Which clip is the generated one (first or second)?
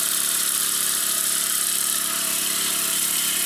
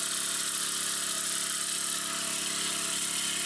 first